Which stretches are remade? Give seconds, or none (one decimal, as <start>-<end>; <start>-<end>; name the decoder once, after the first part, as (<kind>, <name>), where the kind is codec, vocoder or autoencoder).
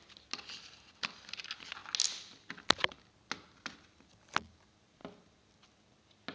none